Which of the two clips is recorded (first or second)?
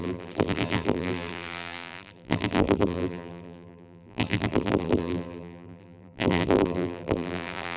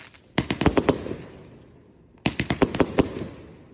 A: second